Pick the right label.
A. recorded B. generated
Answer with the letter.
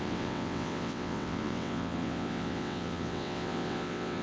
B